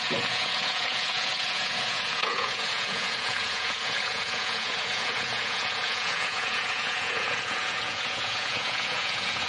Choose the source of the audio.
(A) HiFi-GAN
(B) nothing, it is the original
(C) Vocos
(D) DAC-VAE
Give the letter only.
C